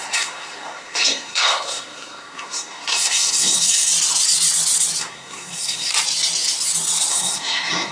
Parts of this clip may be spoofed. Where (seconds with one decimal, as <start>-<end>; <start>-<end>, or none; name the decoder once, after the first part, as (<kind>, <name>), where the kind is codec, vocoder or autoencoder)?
0.0-3.9 (codec, SNAC); 5.0-5.9; 7.1-7.9